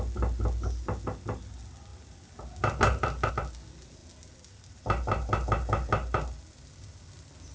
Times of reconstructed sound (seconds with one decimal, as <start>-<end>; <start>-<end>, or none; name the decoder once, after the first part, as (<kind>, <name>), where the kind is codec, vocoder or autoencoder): none

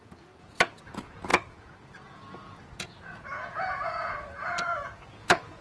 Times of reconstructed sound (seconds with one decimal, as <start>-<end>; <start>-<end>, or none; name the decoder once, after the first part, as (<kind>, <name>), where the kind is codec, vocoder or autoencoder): 0.0-5.6 (vocoder, Vocos)

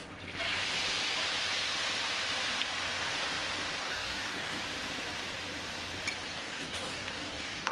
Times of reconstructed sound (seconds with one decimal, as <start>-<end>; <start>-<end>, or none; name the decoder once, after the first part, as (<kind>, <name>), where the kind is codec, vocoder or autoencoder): 3.8-4.6 (codec, DAC); 6.4-7.7

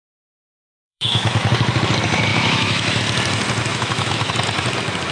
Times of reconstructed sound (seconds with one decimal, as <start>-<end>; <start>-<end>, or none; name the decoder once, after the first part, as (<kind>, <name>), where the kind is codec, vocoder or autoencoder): 0.0-1.5 (autoencoder, DAC-VAE); 2.3-3.0; 3.7-4.3

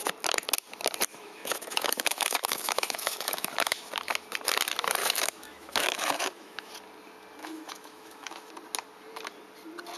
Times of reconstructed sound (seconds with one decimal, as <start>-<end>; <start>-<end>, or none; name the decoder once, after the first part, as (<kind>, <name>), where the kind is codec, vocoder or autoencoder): 1.1-3.9 (autoencoder, DAC-VAE); 5.0-6.7; 7.4-8.5

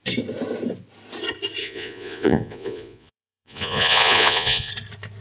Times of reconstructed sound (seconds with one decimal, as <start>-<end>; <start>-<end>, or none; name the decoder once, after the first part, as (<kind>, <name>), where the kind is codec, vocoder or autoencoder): 1.6-4.7 (vocoder, Vocos)